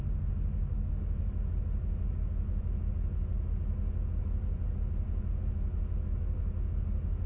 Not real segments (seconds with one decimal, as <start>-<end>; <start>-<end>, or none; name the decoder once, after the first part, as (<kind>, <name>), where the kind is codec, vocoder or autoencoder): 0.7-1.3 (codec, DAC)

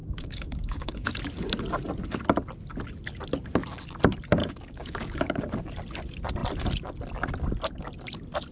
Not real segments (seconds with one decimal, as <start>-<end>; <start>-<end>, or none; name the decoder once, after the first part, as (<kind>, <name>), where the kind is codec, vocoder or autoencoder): 0.0-1.1 (codec, DAC); 4.4-5.4

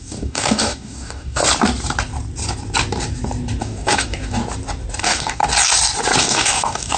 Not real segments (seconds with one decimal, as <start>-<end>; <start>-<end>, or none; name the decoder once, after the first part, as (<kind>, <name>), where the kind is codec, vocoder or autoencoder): 0.0-1.4 (codec, DAC); 3.6-4.4; 5.0-5.4; 6.2-7.0